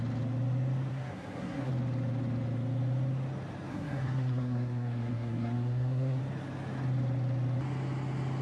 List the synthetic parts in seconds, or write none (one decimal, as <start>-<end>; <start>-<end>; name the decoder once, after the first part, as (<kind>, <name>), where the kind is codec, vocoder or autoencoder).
0.9-1.7 (codec, SNAC); 3.7-6.2

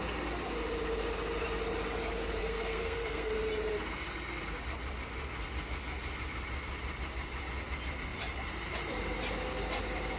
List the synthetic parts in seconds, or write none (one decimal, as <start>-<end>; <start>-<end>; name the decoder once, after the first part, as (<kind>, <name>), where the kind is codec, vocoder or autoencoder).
2.4-3.3 (codec, SNAC)

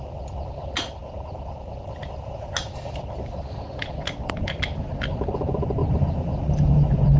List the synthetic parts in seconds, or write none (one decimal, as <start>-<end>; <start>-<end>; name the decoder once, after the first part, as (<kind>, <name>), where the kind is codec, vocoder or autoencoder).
none

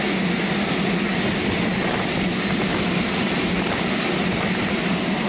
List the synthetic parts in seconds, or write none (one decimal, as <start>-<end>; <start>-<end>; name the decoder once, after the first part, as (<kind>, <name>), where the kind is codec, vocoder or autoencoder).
none

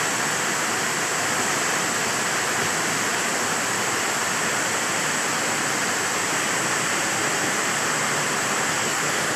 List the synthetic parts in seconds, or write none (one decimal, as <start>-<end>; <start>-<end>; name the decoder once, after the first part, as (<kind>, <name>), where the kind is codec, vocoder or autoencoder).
8.8-9.4 (codec, DAC)

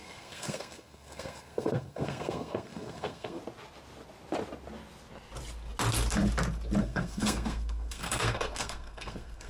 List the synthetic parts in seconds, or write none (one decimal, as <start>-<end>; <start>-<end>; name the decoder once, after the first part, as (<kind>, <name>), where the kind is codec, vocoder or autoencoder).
0.0-3.4 (codec, SNAC); 6.8-9.5

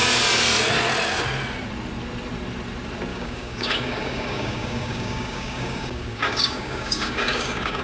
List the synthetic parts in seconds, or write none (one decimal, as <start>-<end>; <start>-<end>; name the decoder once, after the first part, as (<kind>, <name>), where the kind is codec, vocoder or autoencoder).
3.1-7.8 (codec, DAC)

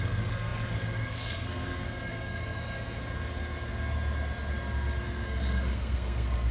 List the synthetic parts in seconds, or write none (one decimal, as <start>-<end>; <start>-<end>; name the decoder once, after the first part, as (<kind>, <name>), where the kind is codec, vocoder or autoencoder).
0.0-3.0 (codec, SNAC); 5.0-6.5